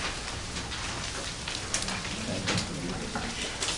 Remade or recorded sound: recorded